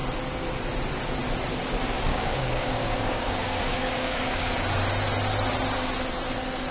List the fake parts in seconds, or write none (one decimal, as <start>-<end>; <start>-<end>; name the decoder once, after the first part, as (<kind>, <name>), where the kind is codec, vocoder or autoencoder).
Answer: 2.1-4.5 (codec, DAC)